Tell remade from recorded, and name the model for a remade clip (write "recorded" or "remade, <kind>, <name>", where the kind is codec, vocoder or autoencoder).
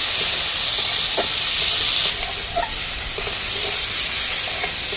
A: recorded